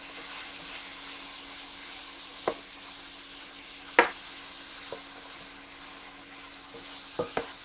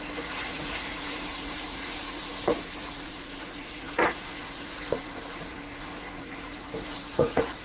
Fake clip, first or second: second